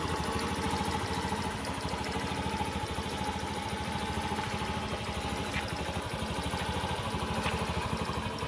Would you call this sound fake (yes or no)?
no